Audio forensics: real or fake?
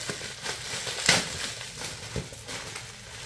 real